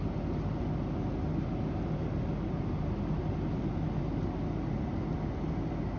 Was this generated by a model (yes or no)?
no